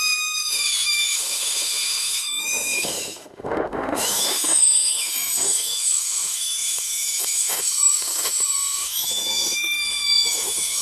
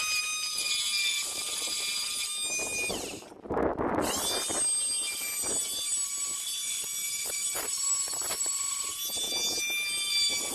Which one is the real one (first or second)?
second